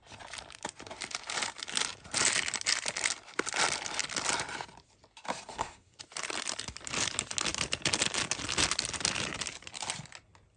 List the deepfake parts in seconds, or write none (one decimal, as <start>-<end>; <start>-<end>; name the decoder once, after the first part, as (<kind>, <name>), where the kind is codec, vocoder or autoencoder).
5.5-6.0 (codec, SNAC)